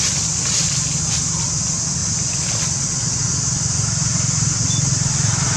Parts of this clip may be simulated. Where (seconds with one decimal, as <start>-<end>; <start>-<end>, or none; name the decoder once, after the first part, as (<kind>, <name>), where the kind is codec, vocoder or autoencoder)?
none